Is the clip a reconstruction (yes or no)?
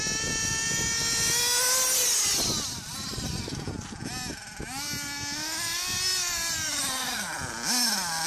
no